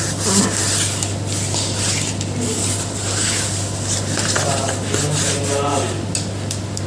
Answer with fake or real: real